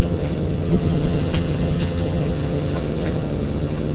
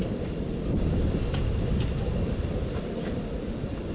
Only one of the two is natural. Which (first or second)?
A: second